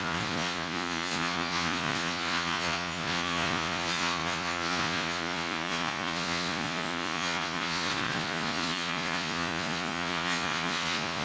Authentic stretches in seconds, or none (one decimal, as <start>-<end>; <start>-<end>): none